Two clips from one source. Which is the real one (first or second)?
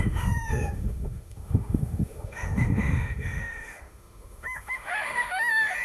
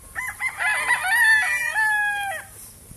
second